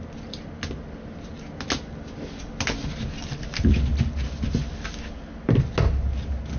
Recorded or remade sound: recorded